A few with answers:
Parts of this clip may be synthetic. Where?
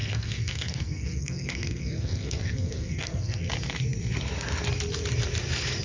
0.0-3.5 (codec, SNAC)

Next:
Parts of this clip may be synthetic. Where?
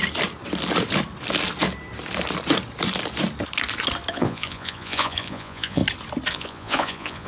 4.1-5.8 (vocoder, Vocos); 6.3-7.3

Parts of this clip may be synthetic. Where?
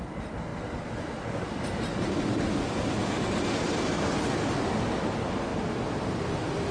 none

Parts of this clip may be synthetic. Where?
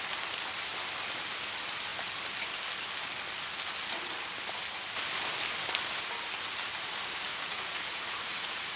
7.3-8.8 (vocoder, Vocos)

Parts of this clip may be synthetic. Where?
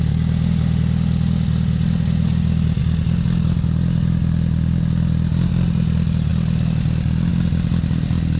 none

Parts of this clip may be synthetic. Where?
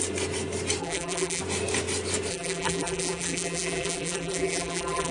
0.8-1.4 (vocoder, BigVGAN v2); 2.3-5.1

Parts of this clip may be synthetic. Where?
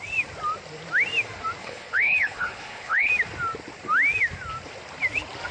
1.6-3.1 (codec, HILCodec)